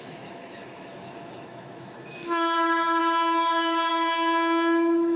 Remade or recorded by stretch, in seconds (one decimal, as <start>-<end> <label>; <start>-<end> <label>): 0.0-5.2 remade